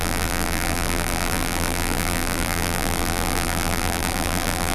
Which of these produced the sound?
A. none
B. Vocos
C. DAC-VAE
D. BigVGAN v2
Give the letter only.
D